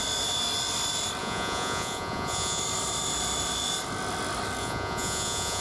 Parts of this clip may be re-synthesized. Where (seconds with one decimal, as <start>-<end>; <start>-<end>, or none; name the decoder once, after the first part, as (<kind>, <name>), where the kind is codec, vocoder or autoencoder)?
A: 1.2-2.6 (vocoder, Vocos); 4.6-5.6